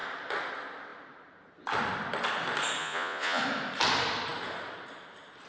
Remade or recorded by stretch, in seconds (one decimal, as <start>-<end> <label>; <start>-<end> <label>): 0.0-2.8 recorded; 2.8-3.4 remade; 3.4-5.5 recorded